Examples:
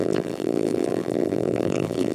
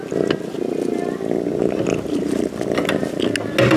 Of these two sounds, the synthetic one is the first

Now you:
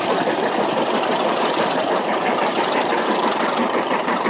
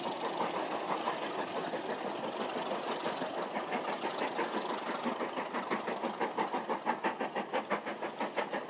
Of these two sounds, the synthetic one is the first